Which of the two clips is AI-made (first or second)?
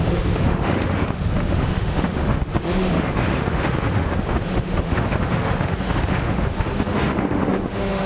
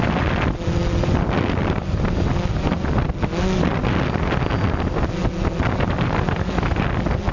first